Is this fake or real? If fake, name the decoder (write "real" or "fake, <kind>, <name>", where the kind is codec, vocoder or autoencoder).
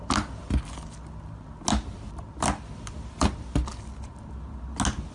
real